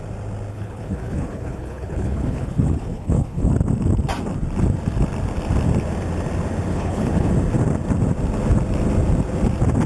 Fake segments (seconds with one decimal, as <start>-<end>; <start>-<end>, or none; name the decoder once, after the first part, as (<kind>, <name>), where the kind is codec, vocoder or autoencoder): 0.5-3.5 (codec, HILCodec); 6.7-7.3